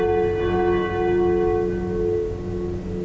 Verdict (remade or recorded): recorded